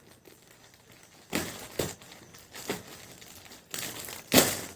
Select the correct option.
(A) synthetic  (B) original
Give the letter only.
B